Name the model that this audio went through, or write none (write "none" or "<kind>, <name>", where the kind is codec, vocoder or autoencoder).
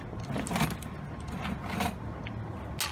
none